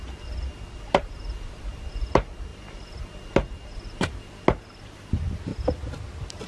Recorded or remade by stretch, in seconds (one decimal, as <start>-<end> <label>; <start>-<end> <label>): 0.0-6.5 recorded

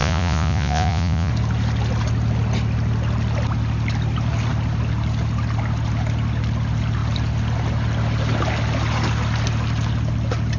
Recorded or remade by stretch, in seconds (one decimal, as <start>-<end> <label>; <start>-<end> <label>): 0.0-1.3 remade; 1.3-10.6 recorded

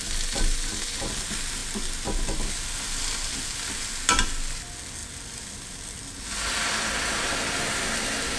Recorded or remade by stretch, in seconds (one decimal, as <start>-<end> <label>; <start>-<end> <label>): 0.0-8.4 recorded

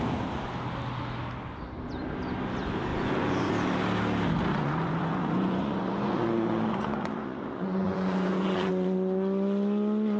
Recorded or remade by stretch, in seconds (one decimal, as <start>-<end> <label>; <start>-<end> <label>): 0.0-2.9 recorded; 2.9-3.5 remade; 3.5-4.5 recorded; 4.5-8.7 remade; 8.7-10.2 recorded

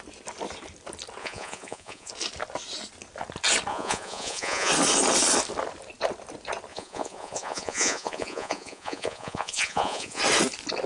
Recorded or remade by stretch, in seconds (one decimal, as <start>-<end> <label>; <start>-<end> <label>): 0.0-1.2 recorded; 1.2-2.1 remade; 2.1-3.7 recorded; 3.7-4.7 remade; 4.7-6.7 recorded; 6.7-10.2 remade; 10.2-10.9 recorded

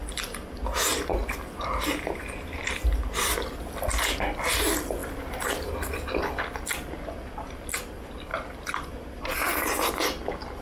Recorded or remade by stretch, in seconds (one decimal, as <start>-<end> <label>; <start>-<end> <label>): 0.0-10.6 recorded

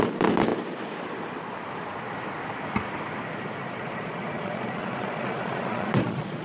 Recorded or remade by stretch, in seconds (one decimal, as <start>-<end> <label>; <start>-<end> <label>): 0.0-3.6 recorded; 3.6-6.4 remade